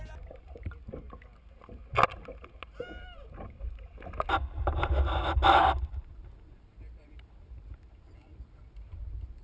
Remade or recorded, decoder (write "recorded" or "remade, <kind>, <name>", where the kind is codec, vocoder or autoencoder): recorded